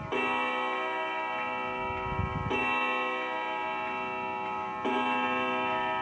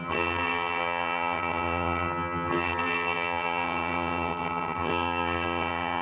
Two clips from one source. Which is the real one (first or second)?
first